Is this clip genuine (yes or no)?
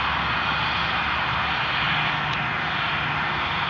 yes